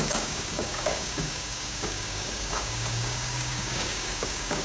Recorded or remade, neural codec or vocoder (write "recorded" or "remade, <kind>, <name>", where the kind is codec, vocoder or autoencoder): remade, codec, DAC